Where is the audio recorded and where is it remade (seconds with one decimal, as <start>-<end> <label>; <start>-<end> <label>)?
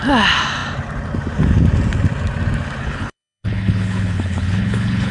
0.0-2.8 recorded; 2.8-5.1 remade